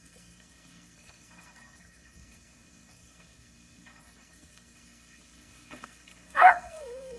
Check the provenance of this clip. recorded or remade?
remade